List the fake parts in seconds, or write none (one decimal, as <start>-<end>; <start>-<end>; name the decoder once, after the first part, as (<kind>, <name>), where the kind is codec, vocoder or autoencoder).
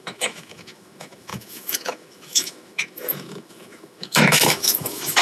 0.0-5.2 (autoencoder, DAC-VAE)